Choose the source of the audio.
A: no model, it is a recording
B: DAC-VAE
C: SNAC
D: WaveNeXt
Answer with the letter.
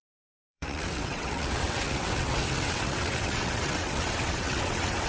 D